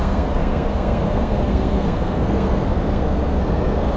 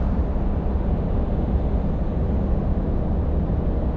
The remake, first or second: first